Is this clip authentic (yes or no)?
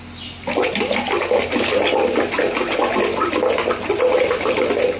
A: yes